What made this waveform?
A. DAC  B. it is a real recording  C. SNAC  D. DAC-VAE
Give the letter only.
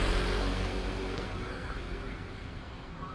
C